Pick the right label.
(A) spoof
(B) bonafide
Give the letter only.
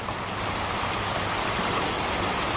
B